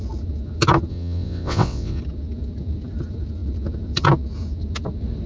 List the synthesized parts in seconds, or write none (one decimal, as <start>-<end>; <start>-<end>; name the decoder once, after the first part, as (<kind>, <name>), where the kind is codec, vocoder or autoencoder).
0.9-2.0 (vocoder, WaveNeXt)

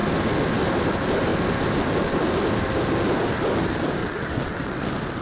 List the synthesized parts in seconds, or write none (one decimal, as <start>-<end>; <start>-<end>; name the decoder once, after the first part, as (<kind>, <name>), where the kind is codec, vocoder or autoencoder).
4.0-4.8 (vocoder, WaveNeXt)

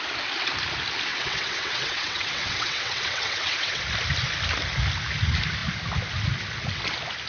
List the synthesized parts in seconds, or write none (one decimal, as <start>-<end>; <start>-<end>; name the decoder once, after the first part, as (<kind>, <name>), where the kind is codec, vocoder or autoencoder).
1.1-3.8 (vocoder, WaveNeXt)

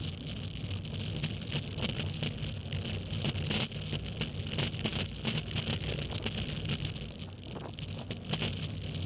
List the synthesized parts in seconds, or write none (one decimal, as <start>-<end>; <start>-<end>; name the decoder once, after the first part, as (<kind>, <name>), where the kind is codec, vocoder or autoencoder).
none

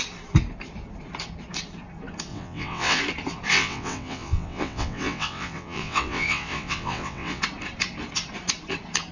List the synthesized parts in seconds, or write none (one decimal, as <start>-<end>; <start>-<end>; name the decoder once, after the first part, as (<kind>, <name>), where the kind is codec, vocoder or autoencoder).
2.3-3.0 (vocoder, WaveNeXt); 3.5-7.4

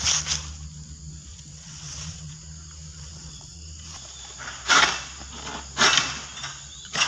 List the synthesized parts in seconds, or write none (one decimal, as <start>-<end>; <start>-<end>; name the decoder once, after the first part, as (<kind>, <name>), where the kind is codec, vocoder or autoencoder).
1.3-2.3 (vocoder, WaveNeXt); 2.9-3.6

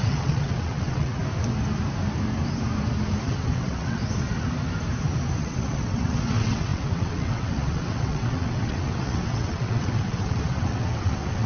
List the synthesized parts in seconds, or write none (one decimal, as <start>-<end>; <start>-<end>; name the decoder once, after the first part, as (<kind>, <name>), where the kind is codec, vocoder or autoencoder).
0.0-1.2 (vocoder, WaveNeXt); 3.2-4.0; 5.4-11.5